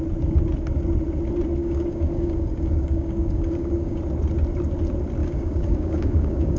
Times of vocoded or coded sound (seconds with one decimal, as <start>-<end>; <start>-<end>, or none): 1.6-4.0; 5.2-6.6